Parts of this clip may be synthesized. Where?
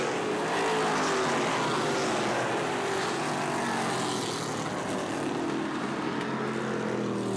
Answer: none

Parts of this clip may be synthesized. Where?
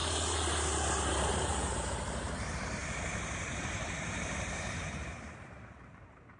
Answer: 1.3-6.4 (vocoder, BigVGAN v2)